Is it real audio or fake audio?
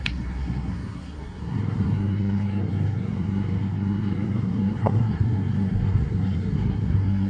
fake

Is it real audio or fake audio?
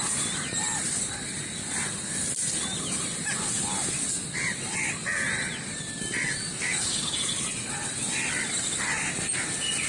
real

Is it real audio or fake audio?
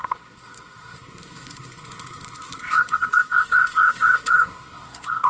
fake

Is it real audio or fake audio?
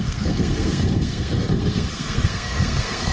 fake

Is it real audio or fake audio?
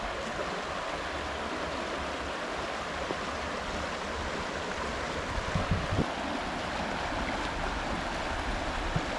real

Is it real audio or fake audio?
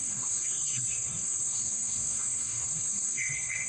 fake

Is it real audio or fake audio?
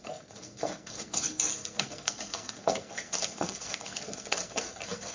fake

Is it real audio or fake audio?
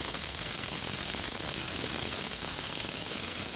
fake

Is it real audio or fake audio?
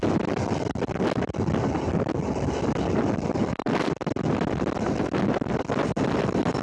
real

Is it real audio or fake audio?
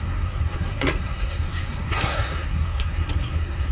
fake